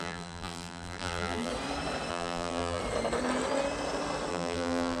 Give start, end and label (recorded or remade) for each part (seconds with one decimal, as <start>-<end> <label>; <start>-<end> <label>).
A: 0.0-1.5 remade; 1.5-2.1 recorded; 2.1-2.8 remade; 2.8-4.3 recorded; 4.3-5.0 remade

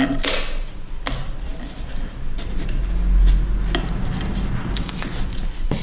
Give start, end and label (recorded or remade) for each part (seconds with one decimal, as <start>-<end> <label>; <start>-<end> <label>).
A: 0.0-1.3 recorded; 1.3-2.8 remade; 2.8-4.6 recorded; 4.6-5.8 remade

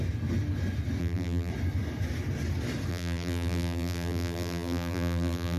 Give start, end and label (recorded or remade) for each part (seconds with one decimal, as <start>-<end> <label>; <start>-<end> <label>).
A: 0.0-1.0 recorded; 1.0-1.5 remade; 1.5-2.9 recorded; 2.9-5.6 remade